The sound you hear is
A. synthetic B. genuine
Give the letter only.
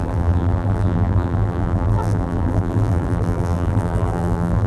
A